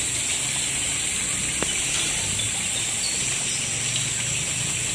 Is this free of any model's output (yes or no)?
yes